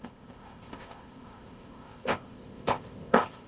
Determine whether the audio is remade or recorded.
remade